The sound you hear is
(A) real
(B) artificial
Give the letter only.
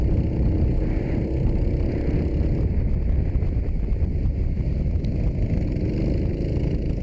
A